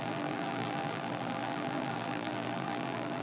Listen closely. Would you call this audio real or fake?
fake